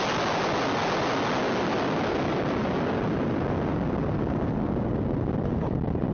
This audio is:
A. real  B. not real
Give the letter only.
A